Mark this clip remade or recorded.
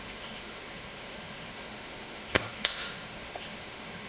remade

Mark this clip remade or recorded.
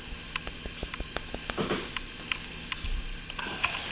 recorded